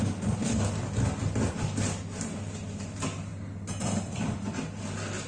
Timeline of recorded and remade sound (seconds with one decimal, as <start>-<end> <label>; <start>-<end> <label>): 0.0-5.3 recorded